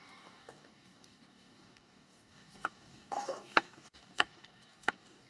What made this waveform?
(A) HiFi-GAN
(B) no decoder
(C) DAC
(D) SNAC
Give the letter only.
C